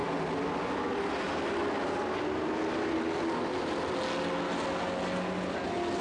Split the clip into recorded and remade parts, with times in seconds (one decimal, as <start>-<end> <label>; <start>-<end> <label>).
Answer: 0.0-6.0 recorded